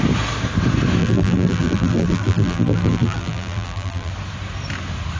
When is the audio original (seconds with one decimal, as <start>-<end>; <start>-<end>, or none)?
0.0-1.0; 4.1-5.2